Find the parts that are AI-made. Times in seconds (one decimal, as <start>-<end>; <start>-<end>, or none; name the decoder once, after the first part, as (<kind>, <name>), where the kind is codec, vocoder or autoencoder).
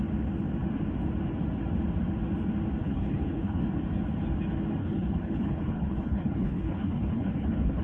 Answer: 2.8-3.6 (codec, HILCodec); 4.8-7.8